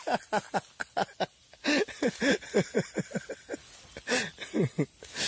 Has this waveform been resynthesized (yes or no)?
no